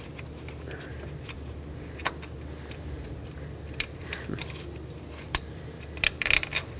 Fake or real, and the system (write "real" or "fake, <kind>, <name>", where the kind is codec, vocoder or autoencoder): fake, vocoder, BigVGAN v2